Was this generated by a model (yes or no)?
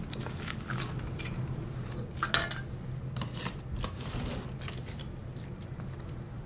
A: no